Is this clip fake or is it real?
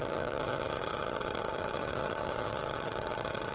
fake